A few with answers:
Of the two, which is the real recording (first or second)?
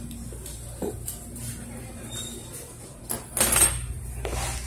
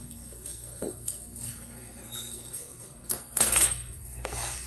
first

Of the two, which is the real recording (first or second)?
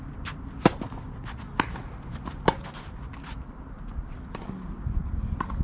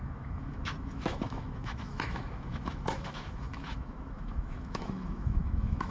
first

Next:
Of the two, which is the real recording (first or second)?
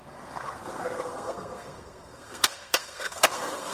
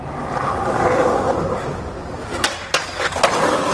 second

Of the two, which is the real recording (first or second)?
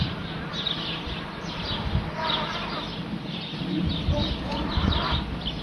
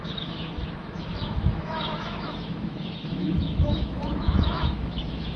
first